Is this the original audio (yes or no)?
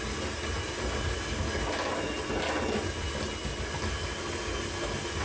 yes